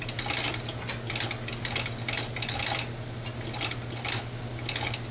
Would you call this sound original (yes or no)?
yes